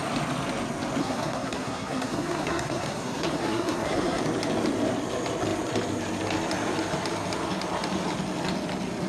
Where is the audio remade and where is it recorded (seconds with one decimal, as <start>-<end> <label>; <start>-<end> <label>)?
0.0-1.0 recorded; 1.0-4.2 remade; 4.2-9.1 recorded